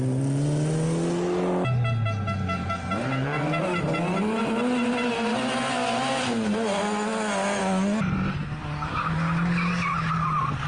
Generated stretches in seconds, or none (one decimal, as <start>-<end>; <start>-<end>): none

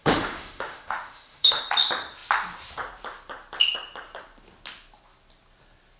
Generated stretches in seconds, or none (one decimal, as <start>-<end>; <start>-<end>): 0.0-1.6

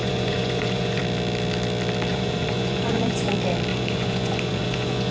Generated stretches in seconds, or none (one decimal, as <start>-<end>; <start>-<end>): 0.0-1.0; 2.1-3.3; 3.7-5.1

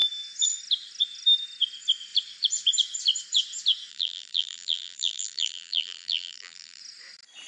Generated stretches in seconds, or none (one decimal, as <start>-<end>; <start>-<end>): 3.9-6.8

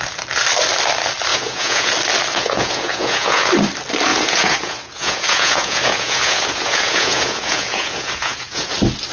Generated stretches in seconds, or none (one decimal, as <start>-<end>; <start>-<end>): 1.3-1.9; 2.3-3.5; 4.1-8.7

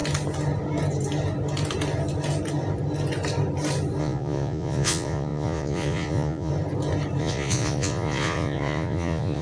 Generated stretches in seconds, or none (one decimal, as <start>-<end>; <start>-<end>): 4.0-6.5; 7.2-9.4